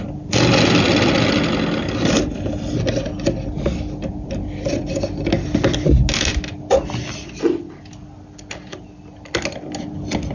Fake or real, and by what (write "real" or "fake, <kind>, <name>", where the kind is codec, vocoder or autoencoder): real